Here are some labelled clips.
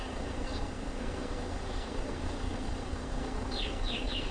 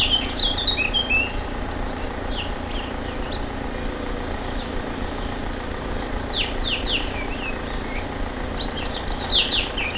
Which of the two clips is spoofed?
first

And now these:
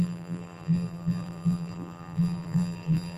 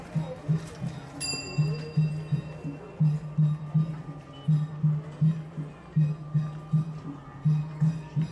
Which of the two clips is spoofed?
first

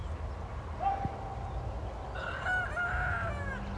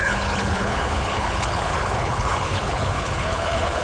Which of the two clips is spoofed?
second